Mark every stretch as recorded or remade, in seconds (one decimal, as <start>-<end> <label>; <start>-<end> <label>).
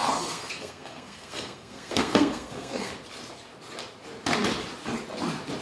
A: 0.0-2.9 remade; 2.9-5.6 recorded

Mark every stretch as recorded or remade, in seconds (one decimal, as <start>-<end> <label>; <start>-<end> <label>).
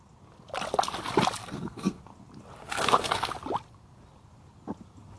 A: 0.0-1.4 recorded; 1.4-2.0 remade; 2.0-2.6 recorded; 2.6-3.3 remade; 3.3-5.2 recorded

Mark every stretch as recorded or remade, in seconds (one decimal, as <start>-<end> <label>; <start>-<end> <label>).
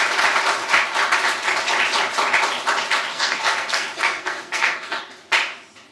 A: 0.0-3.1 recorded; 3.1-5.0 remade; 5.0-5.9 recorded